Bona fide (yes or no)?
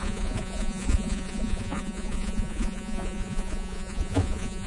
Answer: no